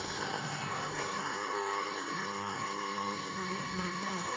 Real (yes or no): no